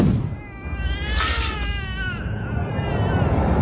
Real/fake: real